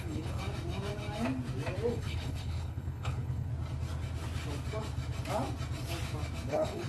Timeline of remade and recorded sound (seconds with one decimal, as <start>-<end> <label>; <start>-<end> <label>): 0.0-0.4 remade; 0.4-1.9 recorded; 1.9-3.5 remade; 3.5-6.5 recorded; 6.5-6.9 remade